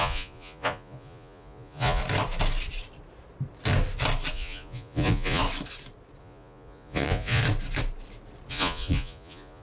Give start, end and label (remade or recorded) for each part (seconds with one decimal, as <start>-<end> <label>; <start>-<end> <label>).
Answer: 0.0-2.0 remade; 2.0-4.3 recorded; 4.3-5.4 remade; 5.4-6.2 recorded; 6.2-7.4 remade; 7.4-8.5 recorded; 8.5-9.6 remade